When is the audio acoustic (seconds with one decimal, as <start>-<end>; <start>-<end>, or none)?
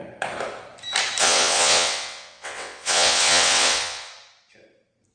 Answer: 0.0-1.2; 4.1-5.1